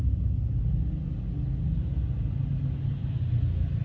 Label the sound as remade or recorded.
recorded